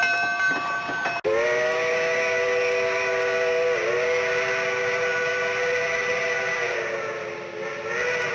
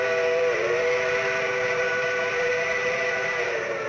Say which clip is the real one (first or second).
first